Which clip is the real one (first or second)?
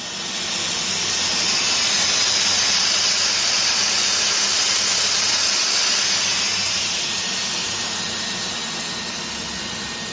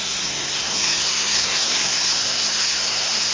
first